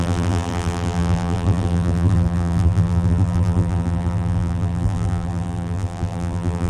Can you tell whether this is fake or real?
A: fake